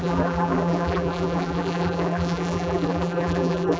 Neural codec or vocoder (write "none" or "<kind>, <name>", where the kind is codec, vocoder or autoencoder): vocoder, BigVGAN v2